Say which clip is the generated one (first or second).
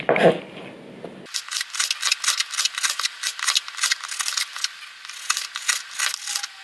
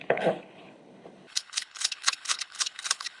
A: second